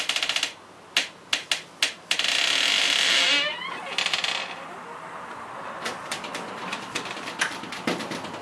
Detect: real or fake real